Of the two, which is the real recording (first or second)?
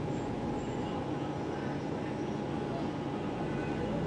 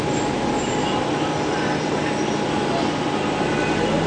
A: second